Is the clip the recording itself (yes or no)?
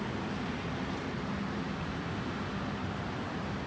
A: yes